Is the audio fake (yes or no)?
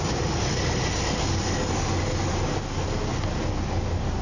no